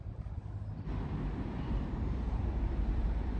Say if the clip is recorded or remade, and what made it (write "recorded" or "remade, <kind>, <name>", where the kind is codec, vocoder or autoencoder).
remade, vocoder, BigVGAN v2